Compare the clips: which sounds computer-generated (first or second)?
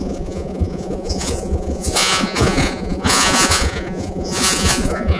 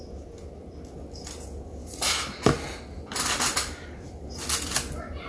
first